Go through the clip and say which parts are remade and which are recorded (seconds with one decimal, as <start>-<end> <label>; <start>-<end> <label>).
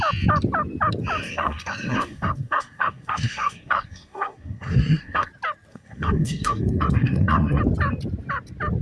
0.0-1.2 recorded; 1.2-5.3 remade; 5.3-5.7 recorded; 5.7-7.6 remade; 7.6-8.8 recorded